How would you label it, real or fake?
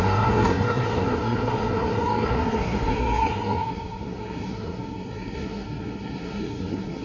fake